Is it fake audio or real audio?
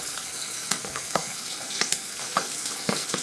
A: fake